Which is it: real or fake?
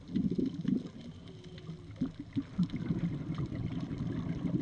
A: real